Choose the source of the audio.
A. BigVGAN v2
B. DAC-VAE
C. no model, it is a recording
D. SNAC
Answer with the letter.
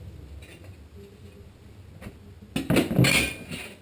C